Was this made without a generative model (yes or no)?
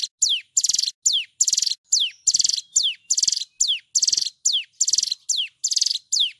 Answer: yes